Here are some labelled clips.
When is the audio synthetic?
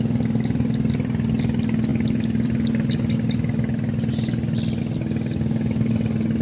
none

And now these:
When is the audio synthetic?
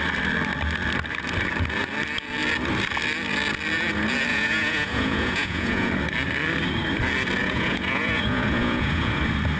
4.3-5.9; 7.4-9.2